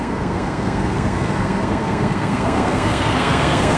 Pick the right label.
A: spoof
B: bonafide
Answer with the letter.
A